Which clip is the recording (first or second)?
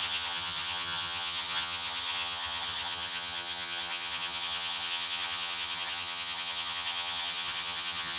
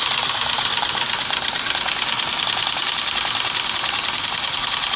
second